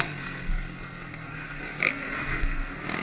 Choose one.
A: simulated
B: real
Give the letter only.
A